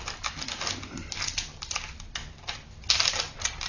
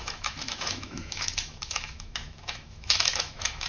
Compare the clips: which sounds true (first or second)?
first